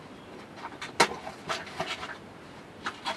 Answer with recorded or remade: recorded